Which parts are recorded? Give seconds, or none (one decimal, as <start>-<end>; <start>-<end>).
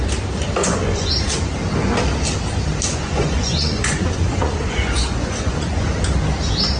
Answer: 0.0-0.6; 1.2-2.9; 5.9-6.8